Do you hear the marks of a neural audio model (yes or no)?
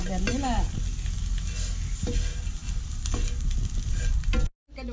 no